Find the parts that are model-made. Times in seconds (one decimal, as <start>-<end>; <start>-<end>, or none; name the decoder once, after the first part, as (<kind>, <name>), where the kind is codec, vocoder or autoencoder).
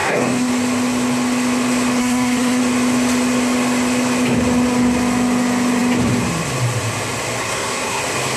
0.0-0.5 (codec, SNAC); 2.0-2.6; 7.4-8.0